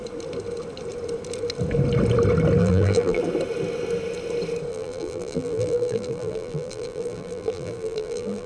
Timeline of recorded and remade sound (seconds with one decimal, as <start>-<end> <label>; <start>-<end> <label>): 0.0-2.6 recorded; 2.6-3.2 remade; 3.2-4.7 recorded; 4.7-8.5 remade